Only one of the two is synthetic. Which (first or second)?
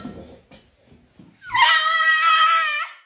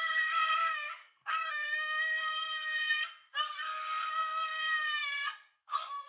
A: second